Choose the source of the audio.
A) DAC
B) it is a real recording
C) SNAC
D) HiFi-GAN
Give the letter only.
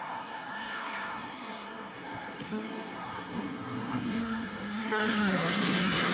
C